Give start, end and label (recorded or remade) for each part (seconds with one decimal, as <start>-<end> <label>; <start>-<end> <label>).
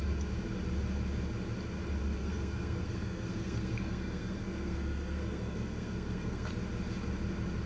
0.0-2.2 recorded; 2.2-6.5 remade; 6.5-7.7 recorded